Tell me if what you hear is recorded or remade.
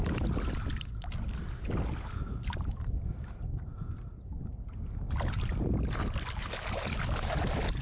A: recorded